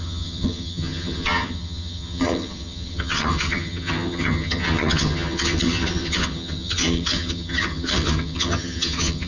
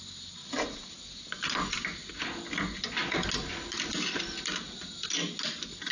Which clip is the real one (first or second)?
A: second